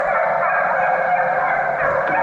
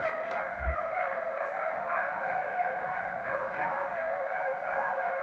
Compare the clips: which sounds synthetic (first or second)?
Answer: second